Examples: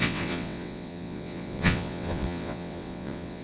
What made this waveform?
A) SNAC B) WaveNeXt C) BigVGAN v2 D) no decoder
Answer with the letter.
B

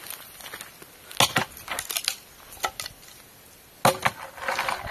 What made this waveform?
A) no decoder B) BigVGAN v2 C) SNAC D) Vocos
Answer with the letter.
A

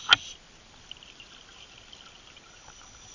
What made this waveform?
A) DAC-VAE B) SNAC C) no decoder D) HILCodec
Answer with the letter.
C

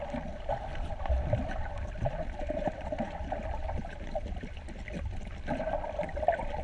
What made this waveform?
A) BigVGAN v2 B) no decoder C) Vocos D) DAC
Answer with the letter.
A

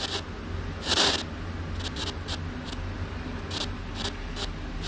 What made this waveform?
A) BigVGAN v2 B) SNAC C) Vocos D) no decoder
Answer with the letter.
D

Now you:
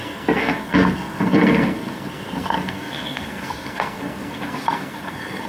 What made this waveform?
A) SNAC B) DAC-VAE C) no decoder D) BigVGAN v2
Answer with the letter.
A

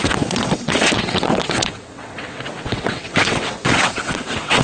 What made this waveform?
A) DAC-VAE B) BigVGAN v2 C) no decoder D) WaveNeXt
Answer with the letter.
D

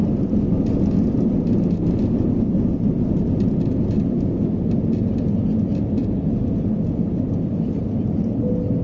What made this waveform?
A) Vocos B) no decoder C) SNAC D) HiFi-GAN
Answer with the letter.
B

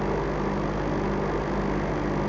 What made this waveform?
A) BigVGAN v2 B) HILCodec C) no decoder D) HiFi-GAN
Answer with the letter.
C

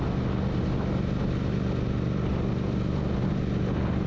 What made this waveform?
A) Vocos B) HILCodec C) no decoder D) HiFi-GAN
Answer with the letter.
C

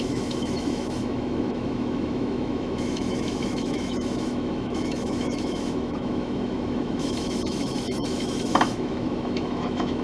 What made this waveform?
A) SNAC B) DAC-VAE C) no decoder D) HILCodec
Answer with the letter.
B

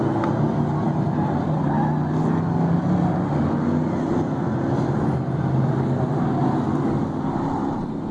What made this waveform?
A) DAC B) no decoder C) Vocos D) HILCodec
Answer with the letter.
B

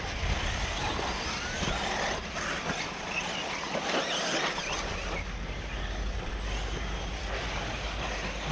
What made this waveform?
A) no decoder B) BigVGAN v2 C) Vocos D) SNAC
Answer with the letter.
A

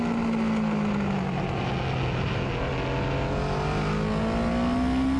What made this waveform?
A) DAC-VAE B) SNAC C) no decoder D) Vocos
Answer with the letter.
C